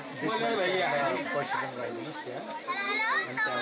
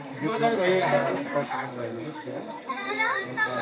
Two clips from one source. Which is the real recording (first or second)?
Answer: first